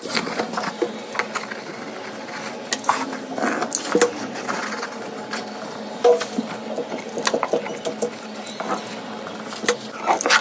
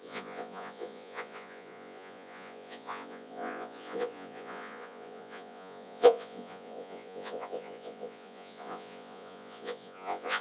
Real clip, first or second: first